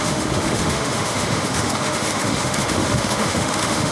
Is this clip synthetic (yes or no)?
yes